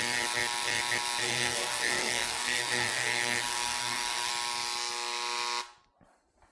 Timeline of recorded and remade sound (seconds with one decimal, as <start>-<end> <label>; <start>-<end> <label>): 0.0-1.2 recorded; 1.2-4.3 remade; 4.3-6.5 recorded